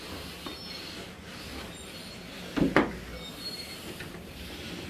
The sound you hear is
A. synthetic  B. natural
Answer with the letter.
B